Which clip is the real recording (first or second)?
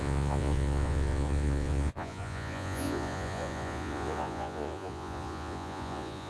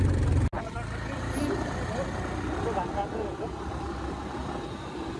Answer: second